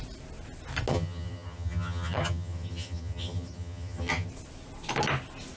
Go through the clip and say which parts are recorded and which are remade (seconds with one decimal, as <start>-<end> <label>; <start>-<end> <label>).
0.0-0.9 recorded; 0.9-4.3 remade; 4.3-5.6 recorded